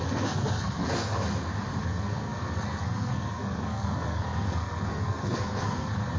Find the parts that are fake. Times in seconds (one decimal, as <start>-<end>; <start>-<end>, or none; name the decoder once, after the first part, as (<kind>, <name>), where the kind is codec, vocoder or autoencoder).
0.0-1.2 (codec, SNAC); 1.8-6.2